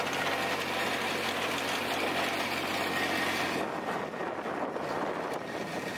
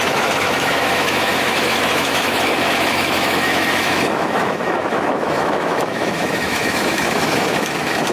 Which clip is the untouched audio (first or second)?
first